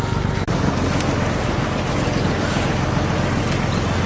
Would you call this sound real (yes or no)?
yes